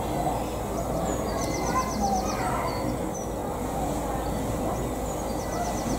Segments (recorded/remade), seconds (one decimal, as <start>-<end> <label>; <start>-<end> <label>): 0.0-6.0 recorded